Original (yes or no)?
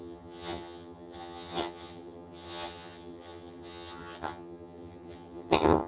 no